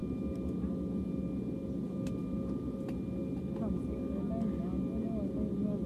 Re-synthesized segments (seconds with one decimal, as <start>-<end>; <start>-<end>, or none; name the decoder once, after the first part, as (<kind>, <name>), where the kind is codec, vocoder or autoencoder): none